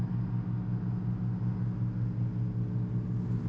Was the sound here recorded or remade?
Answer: recorded